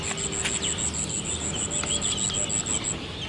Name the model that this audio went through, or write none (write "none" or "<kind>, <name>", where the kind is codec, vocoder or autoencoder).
none